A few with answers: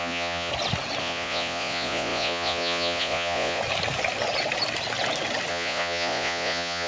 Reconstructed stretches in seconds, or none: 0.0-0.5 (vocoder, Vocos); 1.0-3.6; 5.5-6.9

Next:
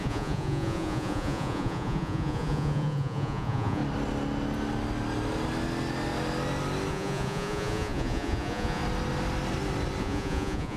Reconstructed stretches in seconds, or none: 0.0-3.8 (vocoder, Vocos); 6.9-8.8; 10.0-10.8

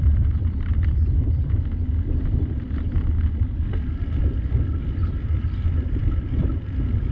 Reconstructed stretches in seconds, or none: 0.0-1.6 (vocoder, BigVGAN v2); 4.2-7.1

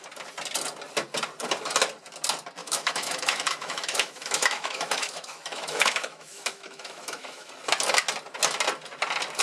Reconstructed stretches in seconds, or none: 2.6-7.5 (autoencoder, DAC-VAE)

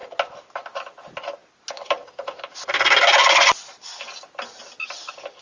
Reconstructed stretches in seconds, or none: none

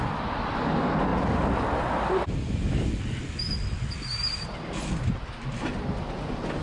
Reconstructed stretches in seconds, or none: none